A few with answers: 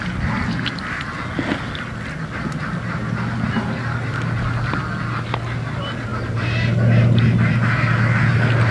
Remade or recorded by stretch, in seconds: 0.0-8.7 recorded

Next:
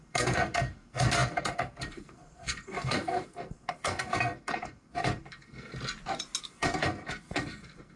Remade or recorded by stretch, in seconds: 0.0-5.7 remade; 5.7-6.4 recorded; 6.4-8.0 remade